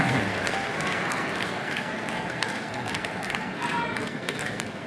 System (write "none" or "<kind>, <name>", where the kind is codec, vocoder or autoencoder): codec, SNAC